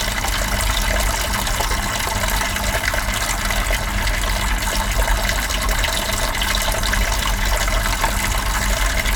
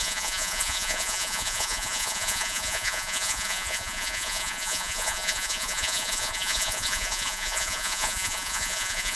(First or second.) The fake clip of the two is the second